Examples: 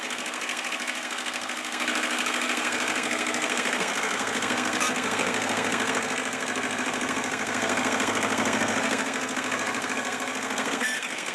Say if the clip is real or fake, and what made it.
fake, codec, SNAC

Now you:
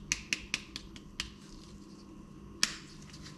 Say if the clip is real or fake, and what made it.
real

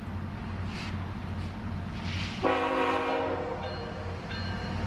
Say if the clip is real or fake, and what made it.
real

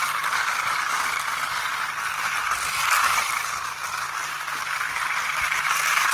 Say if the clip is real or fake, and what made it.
real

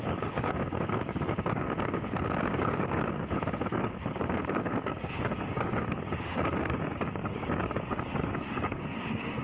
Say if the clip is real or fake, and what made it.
fake, codec, DAC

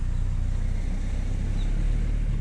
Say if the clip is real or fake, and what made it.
real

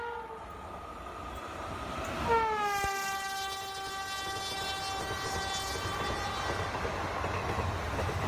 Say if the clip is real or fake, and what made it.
real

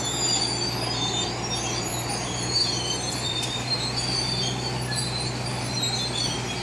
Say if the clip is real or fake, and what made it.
real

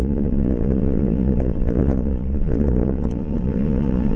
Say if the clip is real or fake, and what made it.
fake, vocoder, Vocos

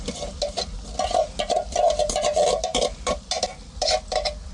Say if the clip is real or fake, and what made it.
real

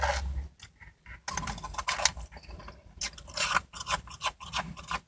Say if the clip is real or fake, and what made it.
real